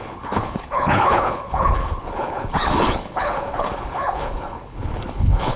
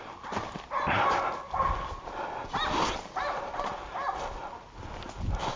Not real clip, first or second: first